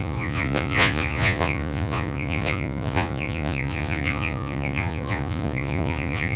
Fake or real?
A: fake